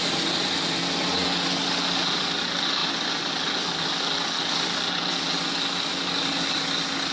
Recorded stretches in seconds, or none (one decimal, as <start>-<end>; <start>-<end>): 0.0-7.1